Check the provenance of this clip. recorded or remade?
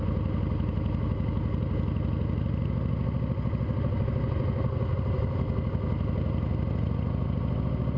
recorded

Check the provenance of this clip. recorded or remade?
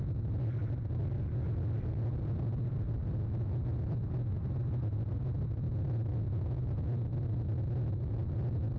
recorded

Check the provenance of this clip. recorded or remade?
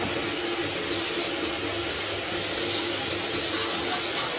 recorded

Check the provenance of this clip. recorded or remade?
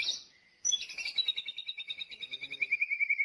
remade